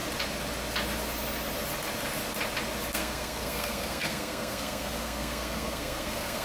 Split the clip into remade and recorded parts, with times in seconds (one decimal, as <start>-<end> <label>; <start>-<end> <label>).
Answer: 0.0-2.9 recorded; 2.9-6.4 remade